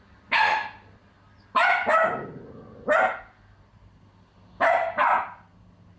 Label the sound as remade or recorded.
recorded